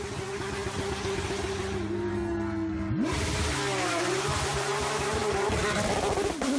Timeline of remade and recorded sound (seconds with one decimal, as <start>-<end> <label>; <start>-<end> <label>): 0.0-2.1 recorded; 2.1-2.9 remade; 2.9-6.6 recorded